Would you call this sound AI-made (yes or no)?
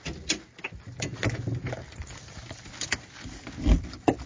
no